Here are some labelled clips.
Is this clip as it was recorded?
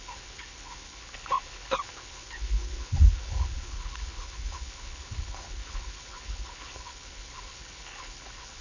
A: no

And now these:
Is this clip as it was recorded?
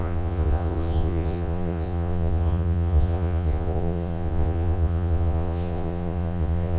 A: no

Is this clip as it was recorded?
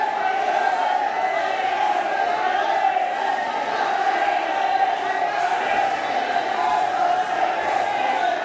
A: yes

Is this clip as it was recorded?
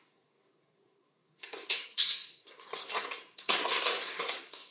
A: no